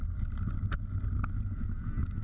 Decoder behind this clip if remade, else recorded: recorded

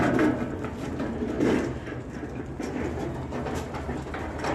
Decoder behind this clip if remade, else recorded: recorded